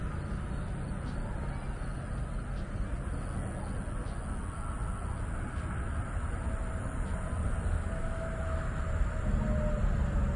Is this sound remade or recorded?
recorded